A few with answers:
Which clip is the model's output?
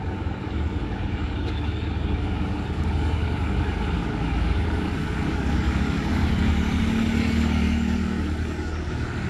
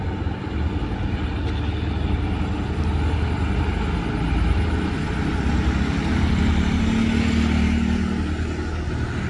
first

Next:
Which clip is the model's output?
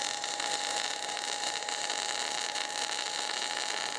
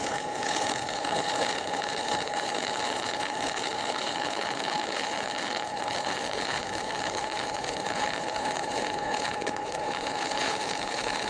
second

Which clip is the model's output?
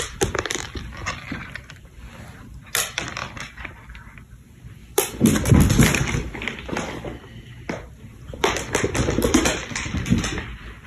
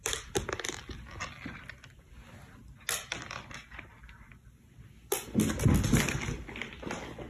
first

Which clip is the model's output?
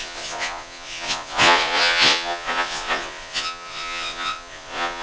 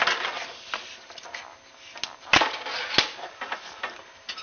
first